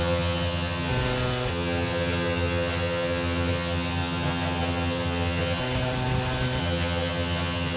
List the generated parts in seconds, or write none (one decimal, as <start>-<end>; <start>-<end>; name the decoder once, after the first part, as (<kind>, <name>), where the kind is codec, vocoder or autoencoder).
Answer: 0.0-0.9 (vocoder, HiFi-GAN); 1.5-5.6; 6.6-7.8